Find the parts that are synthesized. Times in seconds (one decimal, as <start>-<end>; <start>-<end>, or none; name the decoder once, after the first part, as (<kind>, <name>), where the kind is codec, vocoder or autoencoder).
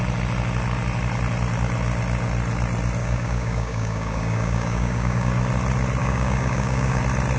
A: 3.0-5.4 (codec, DAC); 6.0-7.0